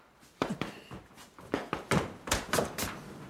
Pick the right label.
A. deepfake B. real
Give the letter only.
A